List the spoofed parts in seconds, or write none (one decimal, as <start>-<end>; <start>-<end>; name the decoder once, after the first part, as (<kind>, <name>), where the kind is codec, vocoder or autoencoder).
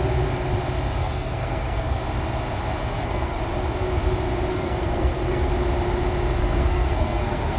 1.0-2.0 (codec, SNAC); 2.8-3.4; 4.5-5.5; 6.4-7.6